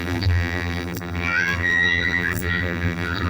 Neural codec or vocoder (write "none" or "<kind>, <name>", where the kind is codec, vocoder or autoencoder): vocoder, BigVGAN v2